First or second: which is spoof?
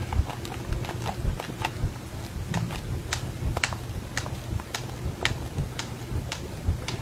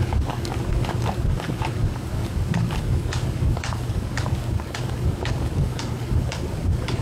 second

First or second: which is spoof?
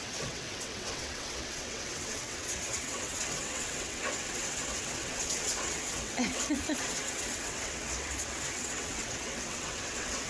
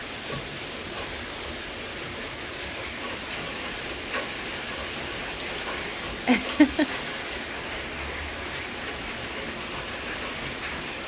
first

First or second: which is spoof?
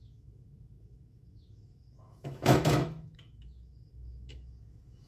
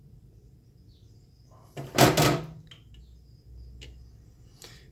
first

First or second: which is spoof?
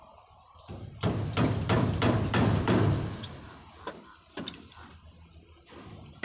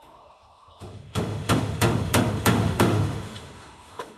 second